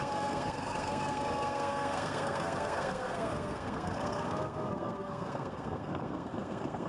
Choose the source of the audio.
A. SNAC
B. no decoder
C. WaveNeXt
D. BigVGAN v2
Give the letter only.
A